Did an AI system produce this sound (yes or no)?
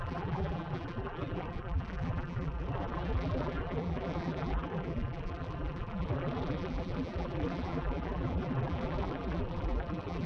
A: yes